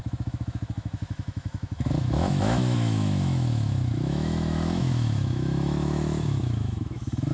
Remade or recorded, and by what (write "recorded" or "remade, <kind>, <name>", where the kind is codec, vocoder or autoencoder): remade, autoencoder, DAC-VAE